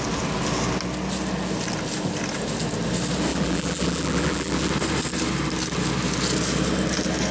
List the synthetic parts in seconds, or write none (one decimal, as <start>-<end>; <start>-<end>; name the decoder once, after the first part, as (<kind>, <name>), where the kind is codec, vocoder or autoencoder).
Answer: 3.3-4.7 (vocoder, BigVGAN v2)